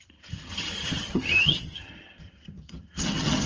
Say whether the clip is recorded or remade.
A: remade